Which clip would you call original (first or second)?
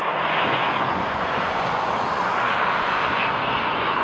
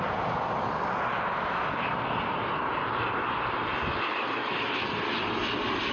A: second